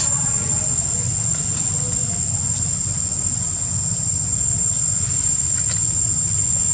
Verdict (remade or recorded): recorded